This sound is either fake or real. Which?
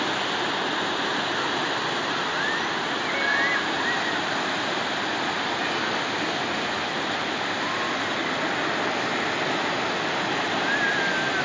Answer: real